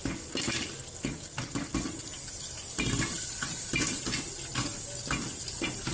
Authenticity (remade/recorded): recorded